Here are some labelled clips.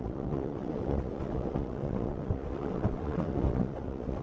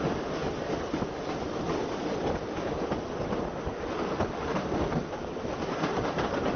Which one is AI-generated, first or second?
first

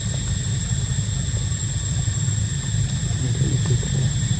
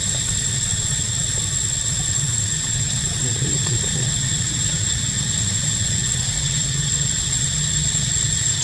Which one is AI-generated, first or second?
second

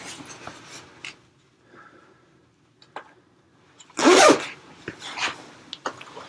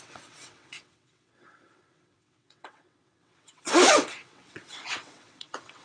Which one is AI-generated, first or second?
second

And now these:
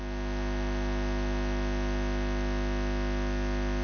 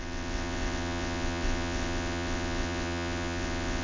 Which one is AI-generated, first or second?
second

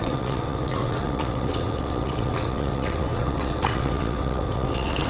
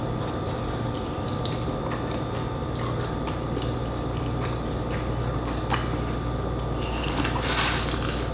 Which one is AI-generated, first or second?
first